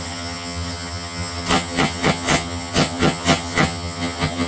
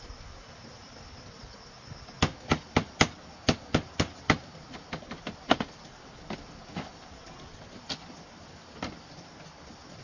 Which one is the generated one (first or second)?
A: first